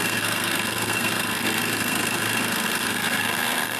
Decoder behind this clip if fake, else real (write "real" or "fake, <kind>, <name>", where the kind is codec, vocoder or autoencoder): fake, codec, SNAC